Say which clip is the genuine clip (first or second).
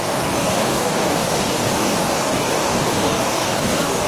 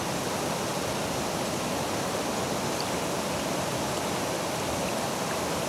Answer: second